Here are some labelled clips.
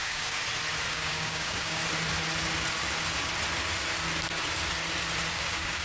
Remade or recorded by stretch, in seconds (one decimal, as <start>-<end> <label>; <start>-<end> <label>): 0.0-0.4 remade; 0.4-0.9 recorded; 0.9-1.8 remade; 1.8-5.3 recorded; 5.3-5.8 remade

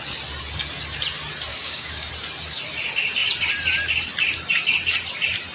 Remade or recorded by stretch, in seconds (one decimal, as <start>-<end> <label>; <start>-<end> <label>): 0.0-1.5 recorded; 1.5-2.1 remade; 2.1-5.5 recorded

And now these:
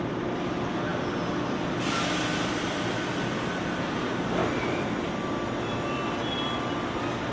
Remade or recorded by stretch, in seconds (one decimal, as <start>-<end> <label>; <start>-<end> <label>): 0.0-7.3 recorded

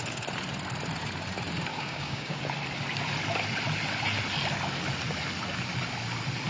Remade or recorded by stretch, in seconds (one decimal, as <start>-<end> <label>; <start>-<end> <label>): 0.0-1.7 recorded; 1.7-2.4 remade; 2.4-6.5 recorded

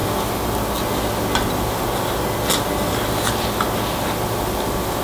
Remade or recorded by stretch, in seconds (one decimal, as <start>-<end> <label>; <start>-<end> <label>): 0.0-5.0 recorded

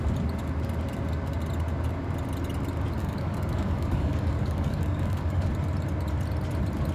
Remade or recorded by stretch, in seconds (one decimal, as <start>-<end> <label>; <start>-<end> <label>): 0.0-3.0 recorded; 3.0-5.5 remade; 5.5-6.9 recorded

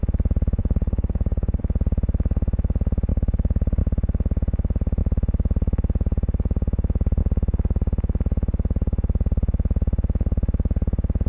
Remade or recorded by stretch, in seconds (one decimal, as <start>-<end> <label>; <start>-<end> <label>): 0.0-0.6 recorded; 0.6-1.6 remade; 1.6-3.1 recorded; 3.1-3.8 remade; 3.8-11.3 recorded